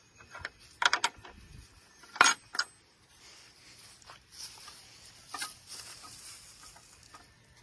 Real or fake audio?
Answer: real